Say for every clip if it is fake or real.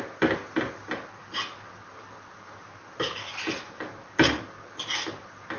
real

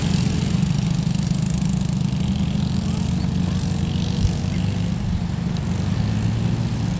real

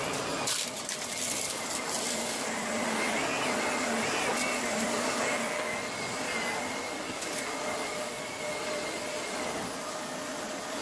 real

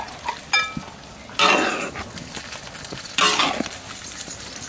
real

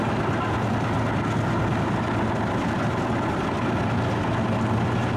real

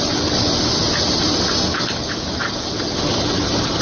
real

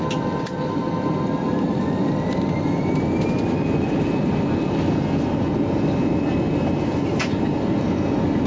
real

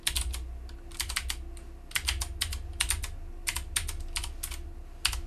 real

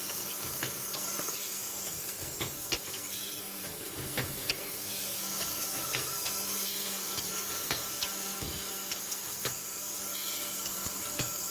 fake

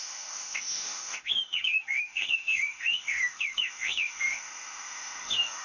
fake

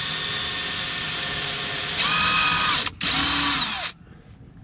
real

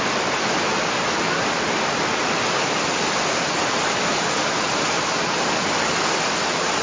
real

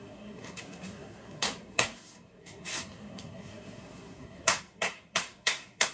fake